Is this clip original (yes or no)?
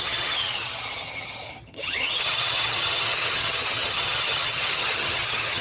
no